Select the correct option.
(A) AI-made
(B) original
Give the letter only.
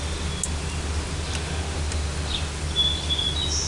B